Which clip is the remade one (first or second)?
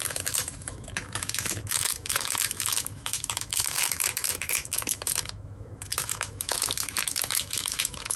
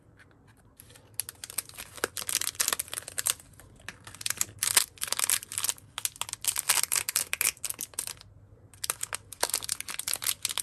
first